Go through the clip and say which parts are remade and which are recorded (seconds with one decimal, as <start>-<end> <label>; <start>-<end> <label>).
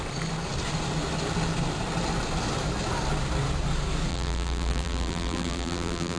0.0-4.1 recorded; 4.1-6.2 remade